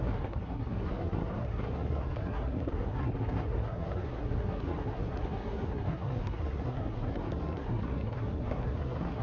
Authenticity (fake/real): fake